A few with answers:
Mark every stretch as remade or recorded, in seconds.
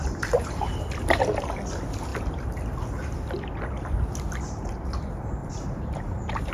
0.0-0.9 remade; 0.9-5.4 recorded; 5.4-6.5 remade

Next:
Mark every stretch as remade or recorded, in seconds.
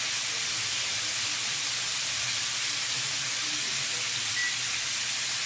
0.0-5.5 recorded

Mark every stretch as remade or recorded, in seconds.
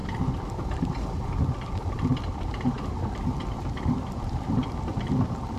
0.0-1.4 remade; 1.4-2.1 recorded; 2.1-5.6 remade